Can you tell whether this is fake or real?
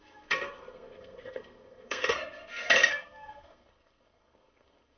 fake